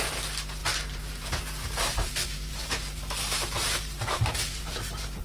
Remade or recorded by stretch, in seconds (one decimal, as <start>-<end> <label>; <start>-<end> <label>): 0.0-0.6 recorded; 0.6-1.3 remade; 1.3-1.9 recorded; 1.9-5.2 remade